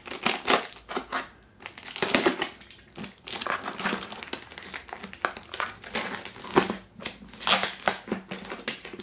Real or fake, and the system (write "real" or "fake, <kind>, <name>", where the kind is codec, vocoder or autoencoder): real